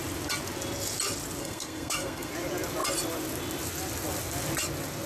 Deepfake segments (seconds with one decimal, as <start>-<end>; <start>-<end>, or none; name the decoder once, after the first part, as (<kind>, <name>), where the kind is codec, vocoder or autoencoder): 1.4-2.3 (codec, SNAC)